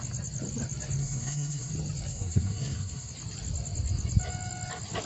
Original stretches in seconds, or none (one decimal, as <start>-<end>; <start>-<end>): 0.0-1.0; 1.7-2.1; 3.1-5.1